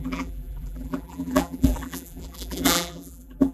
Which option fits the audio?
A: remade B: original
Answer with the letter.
A